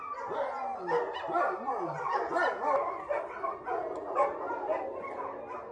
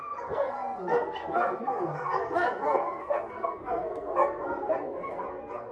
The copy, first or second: second